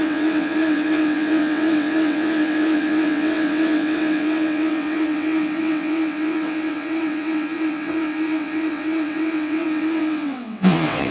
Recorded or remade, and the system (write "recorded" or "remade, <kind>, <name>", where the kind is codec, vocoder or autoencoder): remade, vocoder, WaveNeXt